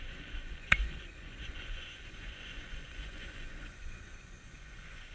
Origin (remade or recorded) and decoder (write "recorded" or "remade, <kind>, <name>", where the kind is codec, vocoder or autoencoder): remade, vocoder, Vocos